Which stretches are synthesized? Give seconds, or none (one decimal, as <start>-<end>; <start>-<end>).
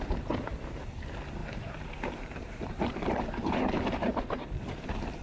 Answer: 1.4-4.2